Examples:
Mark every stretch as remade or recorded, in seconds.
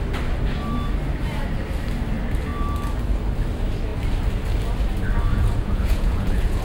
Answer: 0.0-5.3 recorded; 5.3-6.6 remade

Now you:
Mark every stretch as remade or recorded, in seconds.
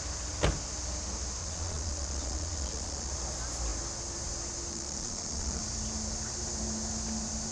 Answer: 0.0-1.4 recorded; 1.4-3.1 remade; 3.1-4.7 recorded; 4.7-5.6 remade; 5.6-7.5 recorded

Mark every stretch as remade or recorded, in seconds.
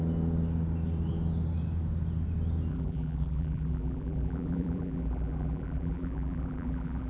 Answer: 0.0-2.7 recorded; 2.7-7.1 remade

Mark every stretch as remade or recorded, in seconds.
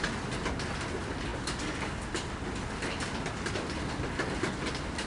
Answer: 0.0-5.1 recorded